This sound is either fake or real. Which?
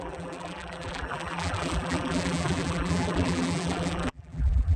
fake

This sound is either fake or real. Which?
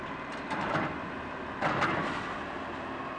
real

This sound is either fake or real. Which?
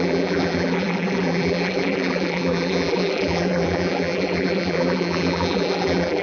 fake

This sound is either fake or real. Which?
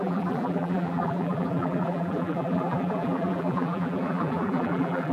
fake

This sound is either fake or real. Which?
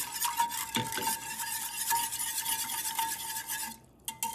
real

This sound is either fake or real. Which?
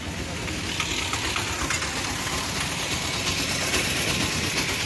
real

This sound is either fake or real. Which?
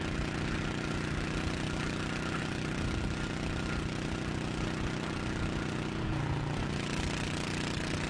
real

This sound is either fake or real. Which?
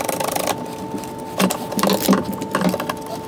real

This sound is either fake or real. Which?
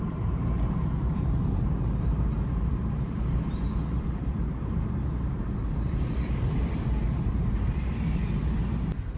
fake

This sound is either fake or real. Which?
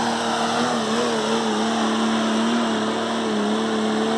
real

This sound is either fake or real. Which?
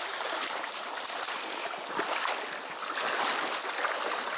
real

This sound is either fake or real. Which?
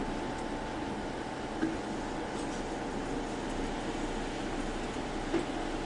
real